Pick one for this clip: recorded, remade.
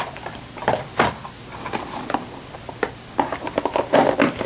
recorded